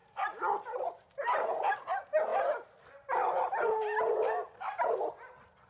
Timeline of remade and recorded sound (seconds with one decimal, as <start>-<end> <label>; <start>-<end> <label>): 0.0-5.7 recorded